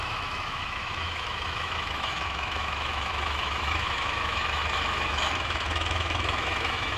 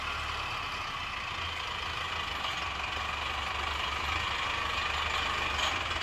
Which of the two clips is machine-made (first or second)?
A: first